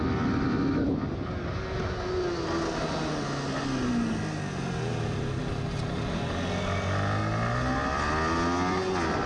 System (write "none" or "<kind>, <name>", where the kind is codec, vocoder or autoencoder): none